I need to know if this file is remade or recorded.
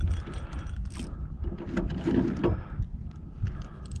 recorded